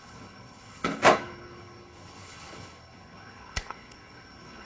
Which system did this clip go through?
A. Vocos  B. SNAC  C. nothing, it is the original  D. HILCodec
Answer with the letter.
D